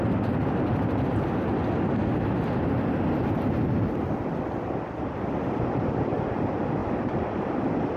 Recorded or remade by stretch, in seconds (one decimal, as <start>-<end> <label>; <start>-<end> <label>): 0.0-8.0 recorded